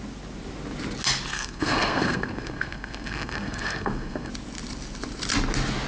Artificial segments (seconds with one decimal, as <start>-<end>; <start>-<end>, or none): 1.3-4.3

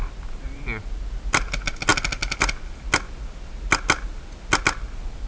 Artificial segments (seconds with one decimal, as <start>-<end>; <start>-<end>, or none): none

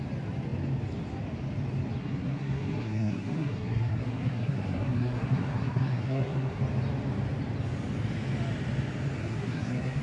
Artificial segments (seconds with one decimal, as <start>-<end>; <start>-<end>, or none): 2.0-6.6; 9.2-10.0

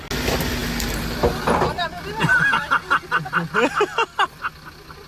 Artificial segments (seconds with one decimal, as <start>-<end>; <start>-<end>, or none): none

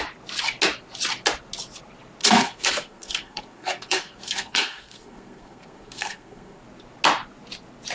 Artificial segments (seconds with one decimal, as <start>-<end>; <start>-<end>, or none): 2.2-6.6

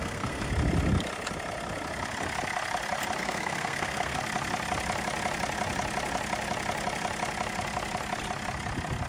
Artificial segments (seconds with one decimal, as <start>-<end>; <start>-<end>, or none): 0.0-0.5; 3.2-4.2

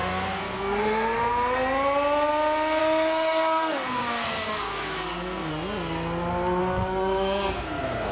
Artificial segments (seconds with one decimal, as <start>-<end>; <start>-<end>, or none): 0.0-1.3; 2.8-5.5; 6.6-8.1